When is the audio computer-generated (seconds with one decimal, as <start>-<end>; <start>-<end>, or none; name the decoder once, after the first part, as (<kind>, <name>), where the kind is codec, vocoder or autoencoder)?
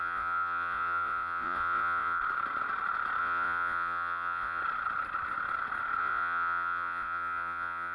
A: 0.0-2.2 (vocoder, Vocos); 3.2-4.6; 6.0-7.9